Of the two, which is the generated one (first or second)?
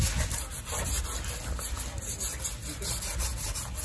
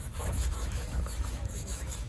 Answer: second